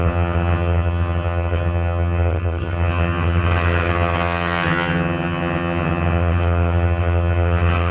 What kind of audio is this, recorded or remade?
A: remade